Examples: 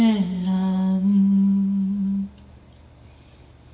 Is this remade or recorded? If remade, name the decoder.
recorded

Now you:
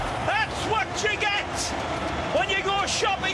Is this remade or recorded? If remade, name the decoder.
remade, vocoder, BigVGAN v2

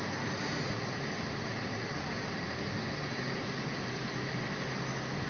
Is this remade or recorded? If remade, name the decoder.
recorded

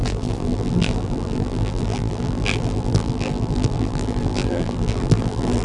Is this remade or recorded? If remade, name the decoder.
remade, vocoder, BigVGAN v2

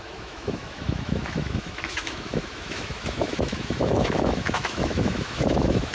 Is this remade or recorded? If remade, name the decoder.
remade, autoencoder, DAC-VAE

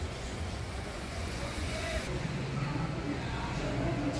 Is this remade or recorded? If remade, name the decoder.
remade, vocoder, Vocos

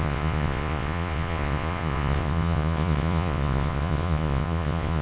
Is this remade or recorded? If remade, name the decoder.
remade, vocoder, Vocos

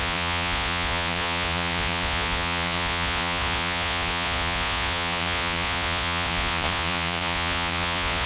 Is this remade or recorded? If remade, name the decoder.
remade, vocoder, Vocos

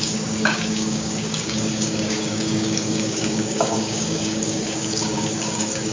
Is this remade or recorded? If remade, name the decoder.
remade, codec, DAC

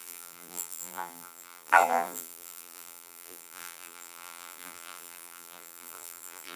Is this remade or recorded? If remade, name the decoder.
remade, vocoder, BigVGAN v2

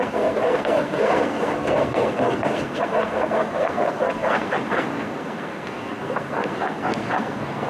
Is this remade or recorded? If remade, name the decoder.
remade, codec, SNAC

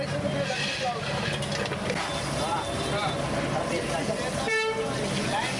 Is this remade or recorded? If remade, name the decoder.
recorded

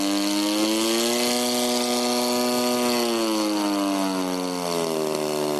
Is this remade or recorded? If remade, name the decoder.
recorded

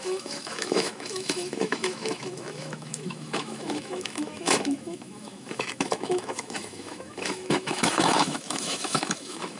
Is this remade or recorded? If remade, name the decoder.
remade, autoencoder, DAC-VAE